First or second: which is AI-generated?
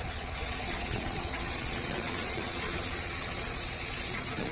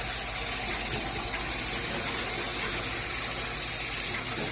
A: first